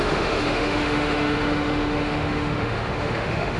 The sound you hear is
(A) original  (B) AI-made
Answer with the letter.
B